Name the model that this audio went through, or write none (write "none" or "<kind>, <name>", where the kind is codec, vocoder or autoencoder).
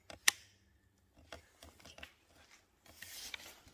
none